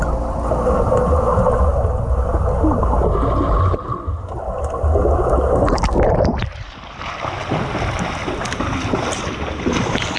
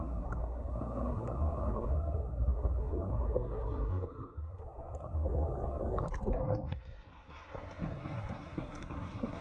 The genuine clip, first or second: first